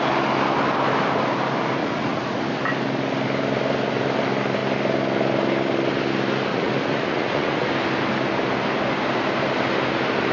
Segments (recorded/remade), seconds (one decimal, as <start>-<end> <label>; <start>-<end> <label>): 0.0-1.8 recorded; 1.8-2.4 remade; 2.4-6.5 recorded; 6.5-7.7 remade; 7.7-10.3 recorded